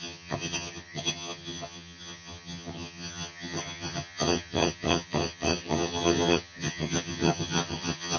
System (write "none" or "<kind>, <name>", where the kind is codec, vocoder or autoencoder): vocoder, HiFi-GAN